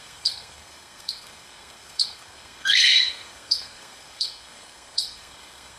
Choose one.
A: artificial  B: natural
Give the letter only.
A